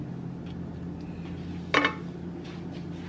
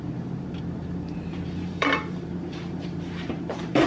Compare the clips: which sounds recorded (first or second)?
first